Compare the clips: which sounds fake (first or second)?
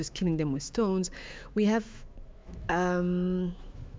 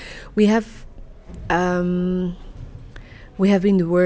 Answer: first